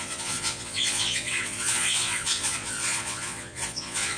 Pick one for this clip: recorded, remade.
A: remade